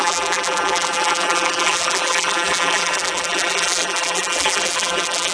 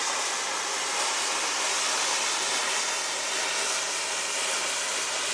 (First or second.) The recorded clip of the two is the second